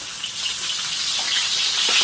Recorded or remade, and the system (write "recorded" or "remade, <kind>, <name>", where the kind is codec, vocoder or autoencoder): recorded